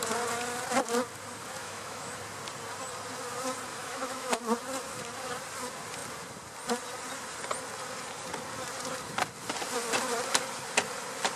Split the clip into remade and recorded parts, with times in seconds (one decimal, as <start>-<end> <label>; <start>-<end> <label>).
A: 0.0-1.6 recorded; 1.6-2.1 remade; 2.1-3.7 recorded; 3.7-4.4 remade; 4.4-11.4 recorded